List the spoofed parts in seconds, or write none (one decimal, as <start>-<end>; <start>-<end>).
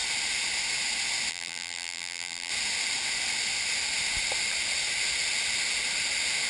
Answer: 1.3-2.5